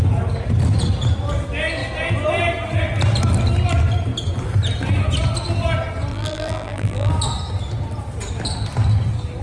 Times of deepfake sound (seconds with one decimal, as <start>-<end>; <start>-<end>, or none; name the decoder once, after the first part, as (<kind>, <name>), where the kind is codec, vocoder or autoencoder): 6.1-7.1 (vocoder, BigVGAN v2)